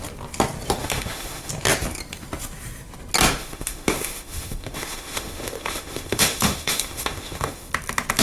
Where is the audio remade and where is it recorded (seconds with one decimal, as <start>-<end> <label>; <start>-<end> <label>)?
0.0-0.8 recorded; 0.8-1.5 remade; 1.5-3.4 recorded; 3.4-7.7 remade; 7.7-8.2 recorded